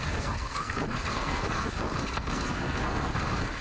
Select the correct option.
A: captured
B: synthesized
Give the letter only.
B